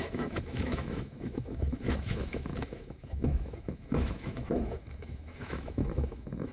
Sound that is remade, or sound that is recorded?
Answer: remade